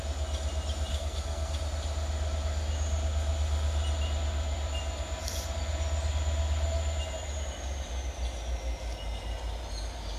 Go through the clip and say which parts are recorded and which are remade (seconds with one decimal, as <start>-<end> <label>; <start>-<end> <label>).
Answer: 0.0-0.9 recorded; 0.9-1.6 remade; 1.6-10.2 recorded